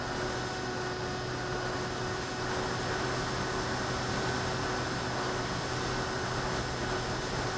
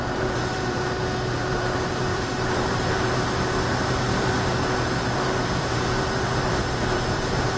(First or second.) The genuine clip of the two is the first